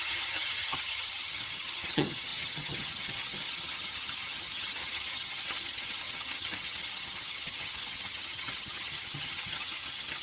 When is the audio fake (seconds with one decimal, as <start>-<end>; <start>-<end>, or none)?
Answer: 0.0-10.2